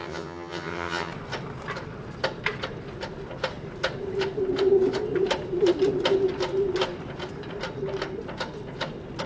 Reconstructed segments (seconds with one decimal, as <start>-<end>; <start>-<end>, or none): 0.0-1.1